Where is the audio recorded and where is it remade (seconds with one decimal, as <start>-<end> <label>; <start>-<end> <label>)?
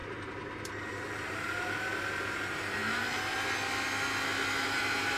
0.0-2.8 remade; 2.8-4.5 recorded; 4.5-5.2 remade